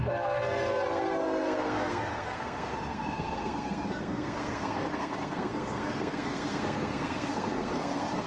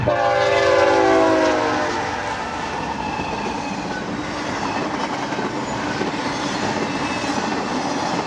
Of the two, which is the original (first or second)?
second